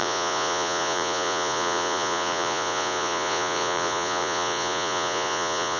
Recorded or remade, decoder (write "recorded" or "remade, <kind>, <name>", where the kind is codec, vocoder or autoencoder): remade, vocoder, Vocos